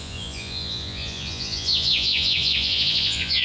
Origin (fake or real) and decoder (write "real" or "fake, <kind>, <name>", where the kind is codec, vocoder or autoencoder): fake, vocoder, Vocos